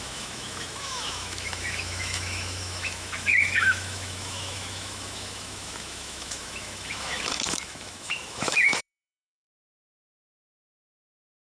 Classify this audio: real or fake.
fake